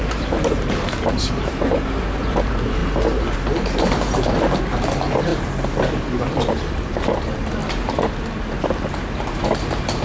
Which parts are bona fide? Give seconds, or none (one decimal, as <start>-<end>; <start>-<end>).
7.6-9.3